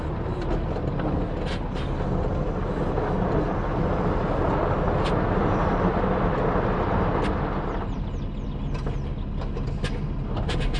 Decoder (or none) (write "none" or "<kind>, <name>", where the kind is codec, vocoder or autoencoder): none